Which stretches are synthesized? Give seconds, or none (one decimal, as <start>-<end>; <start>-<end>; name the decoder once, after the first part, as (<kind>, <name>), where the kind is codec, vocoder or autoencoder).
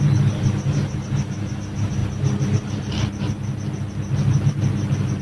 2.0-5.2 (vocoder, BigVGAN v2)